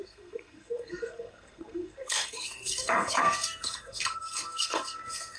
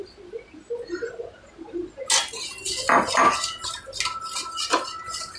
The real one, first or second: second